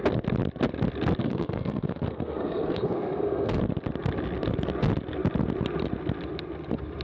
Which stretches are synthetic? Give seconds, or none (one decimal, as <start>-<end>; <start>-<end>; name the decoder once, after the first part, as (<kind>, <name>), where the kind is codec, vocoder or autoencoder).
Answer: 1.2-3.6 (codec, SNAC)